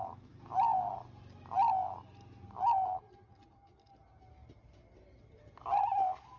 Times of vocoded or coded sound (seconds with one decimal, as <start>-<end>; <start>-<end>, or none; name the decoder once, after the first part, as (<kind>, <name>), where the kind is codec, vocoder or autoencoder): none